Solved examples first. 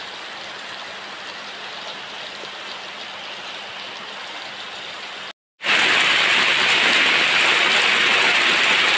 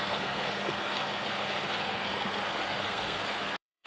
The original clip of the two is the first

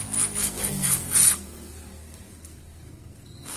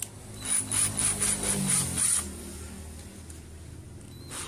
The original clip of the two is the second